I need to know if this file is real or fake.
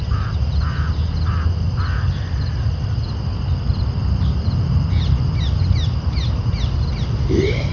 real